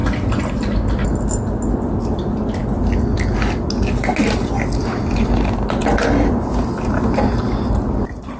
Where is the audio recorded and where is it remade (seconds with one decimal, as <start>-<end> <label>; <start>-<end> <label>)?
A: 0.0-0.6 remade; 0.6-8.4 recorded